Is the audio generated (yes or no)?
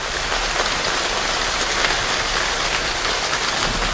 no